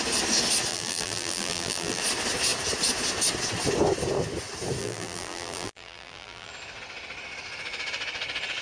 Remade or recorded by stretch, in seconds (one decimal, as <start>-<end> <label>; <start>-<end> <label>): 0.0-0.7 recorded; 0.7-2.0 remade; 2.0-4.8 recorded; 4.8-6.5 remade; 6.5-8.6 recorded